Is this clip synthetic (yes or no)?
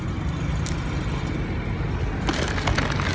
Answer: no